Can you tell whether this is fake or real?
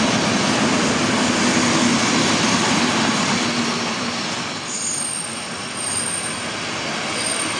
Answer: real